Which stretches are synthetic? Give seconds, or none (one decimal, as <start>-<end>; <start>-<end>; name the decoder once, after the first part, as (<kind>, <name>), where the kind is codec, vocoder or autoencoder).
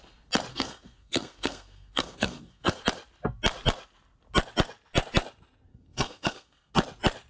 0.5-2.8 (codec, SNAC); 5.7-6.7